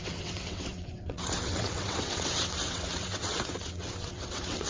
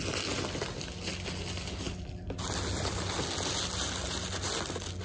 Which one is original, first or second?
second